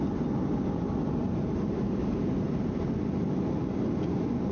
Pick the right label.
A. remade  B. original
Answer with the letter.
B